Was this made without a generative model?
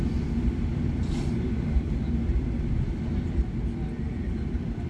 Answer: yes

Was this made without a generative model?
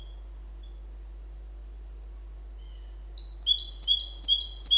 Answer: yes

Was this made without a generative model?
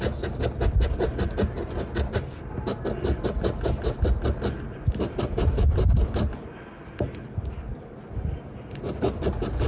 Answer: yes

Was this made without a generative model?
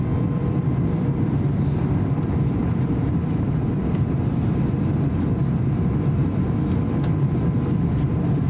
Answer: no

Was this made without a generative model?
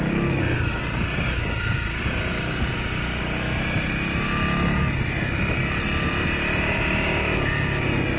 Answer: yes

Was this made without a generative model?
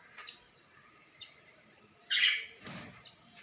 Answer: no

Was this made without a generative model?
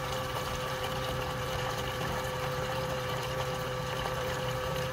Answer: no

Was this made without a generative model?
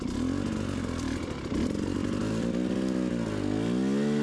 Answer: yes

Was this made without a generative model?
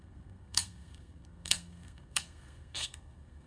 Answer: no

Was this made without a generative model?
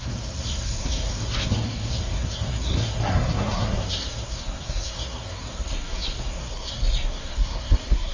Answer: no